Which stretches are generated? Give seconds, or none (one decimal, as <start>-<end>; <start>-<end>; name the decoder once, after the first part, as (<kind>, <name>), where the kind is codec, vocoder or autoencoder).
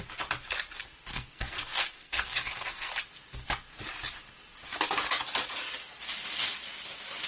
1.1-2.9 (codec, SNAC)